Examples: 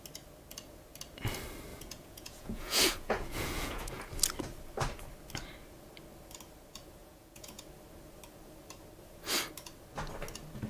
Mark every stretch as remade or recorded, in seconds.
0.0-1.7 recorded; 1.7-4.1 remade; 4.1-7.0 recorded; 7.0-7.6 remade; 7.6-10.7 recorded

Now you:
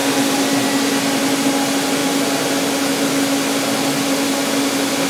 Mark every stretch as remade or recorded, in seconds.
0.0-5.1 recorded